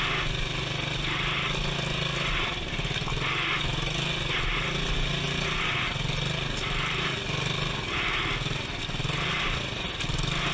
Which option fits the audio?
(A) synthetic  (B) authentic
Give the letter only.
B